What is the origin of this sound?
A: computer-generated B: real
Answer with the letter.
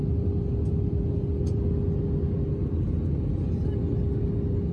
B